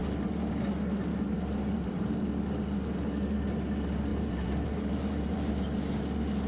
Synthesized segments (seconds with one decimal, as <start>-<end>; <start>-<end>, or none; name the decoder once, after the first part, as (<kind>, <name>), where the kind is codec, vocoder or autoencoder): 1.1-2.3 (vocoder, BigVGAN v2); 4.1-5.5